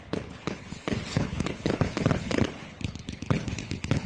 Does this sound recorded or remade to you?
remade